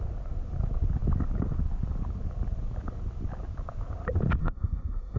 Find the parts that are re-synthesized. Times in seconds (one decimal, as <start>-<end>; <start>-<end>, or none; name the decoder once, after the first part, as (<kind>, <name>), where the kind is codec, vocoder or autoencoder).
4.4-5.2 (codec, SNAC)